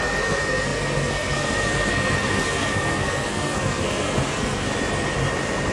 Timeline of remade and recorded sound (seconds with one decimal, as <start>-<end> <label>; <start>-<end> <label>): 0.0-4.7 remade; 4.7-5.7 recorded